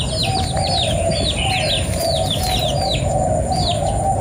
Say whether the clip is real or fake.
real